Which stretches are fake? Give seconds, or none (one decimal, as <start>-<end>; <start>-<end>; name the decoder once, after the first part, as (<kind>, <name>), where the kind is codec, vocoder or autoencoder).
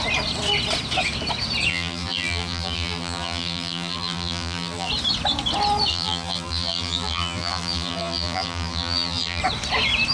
1.7-4.9 (vocoder, BigVGAN v2); 5.9-9.4